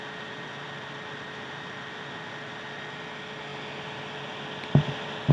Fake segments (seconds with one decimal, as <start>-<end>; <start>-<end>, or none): none